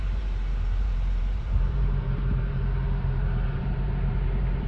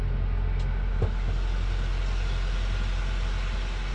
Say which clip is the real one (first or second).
second